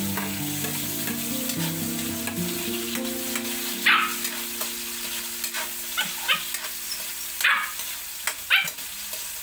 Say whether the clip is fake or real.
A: real